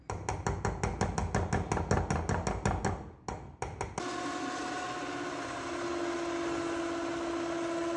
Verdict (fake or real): real